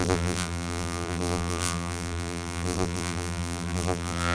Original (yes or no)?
no